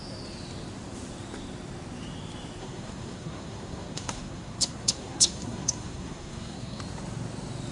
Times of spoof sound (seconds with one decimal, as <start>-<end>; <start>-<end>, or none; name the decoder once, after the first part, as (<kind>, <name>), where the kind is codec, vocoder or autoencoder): 2.6-6.8 (codec, SNAC)